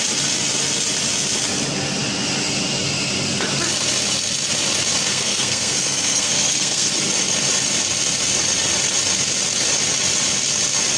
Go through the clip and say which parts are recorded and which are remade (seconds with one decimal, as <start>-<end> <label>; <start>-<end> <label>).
0.0-5.1 recorded; 5.1-6.9 remade; 6.9-11.0 recorded